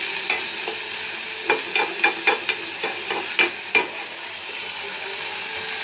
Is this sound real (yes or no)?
yes